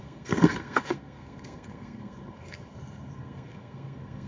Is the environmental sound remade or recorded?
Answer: remade